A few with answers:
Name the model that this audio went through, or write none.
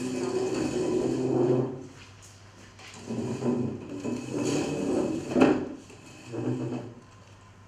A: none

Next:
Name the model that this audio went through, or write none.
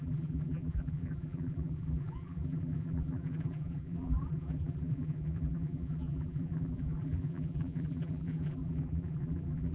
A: vocoder, BigVGAN v2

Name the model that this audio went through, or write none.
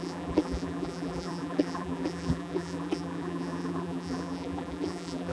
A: vocoder, BigVGAN v2